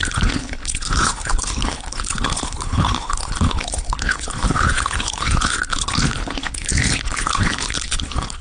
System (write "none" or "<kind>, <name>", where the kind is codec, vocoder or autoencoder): codec, HILCodec